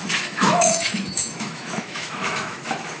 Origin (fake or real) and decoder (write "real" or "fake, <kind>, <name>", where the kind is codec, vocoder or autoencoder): fake, autoencoder, DAC-VAE